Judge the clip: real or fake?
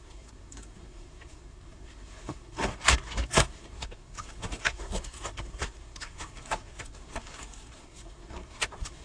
fake